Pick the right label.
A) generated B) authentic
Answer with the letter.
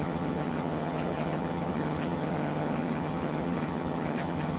A